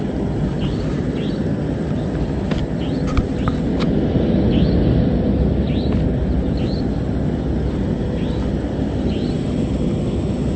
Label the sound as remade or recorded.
recorded